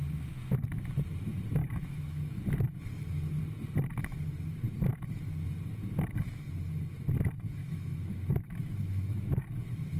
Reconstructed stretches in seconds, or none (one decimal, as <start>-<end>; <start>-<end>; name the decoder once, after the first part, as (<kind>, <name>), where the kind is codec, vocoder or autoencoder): 1.6-2.4 (autoencoder, DAC-VAE); 7.6-9.6

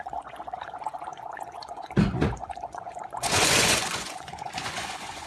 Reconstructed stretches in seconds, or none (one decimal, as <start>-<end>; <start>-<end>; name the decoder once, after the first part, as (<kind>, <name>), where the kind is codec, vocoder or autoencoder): 0.0-5.3 (vocoder, Vocos)